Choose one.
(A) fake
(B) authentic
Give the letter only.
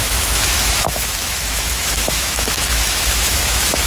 A